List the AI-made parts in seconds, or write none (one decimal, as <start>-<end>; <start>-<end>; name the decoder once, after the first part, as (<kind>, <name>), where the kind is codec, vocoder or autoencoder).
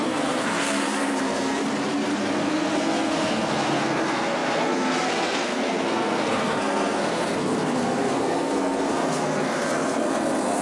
0.0-1.6 (codec, SNAC); 2.2-10.6